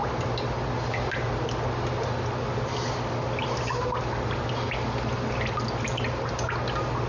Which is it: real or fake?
real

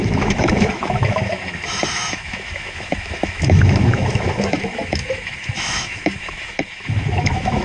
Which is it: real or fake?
fake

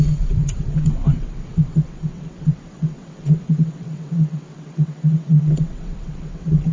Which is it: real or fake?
fake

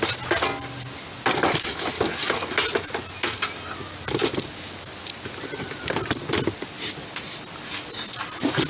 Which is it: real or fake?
real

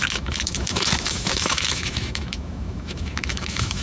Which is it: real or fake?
fake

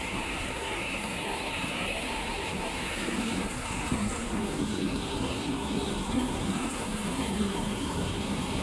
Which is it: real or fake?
fake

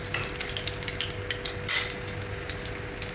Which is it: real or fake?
real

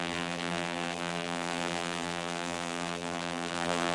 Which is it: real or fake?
fake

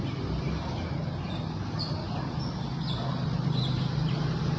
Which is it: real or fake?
real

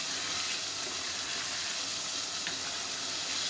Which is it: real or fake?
real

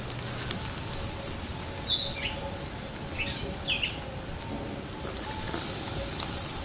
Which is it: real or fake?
real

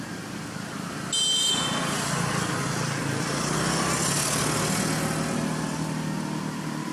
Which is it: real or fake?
real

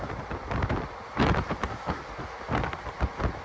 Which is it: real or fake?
real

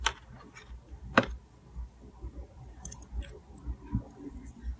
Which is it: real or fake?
real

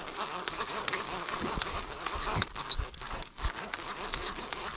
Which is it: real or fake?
fake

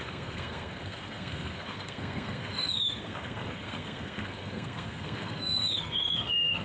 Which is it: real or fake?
fake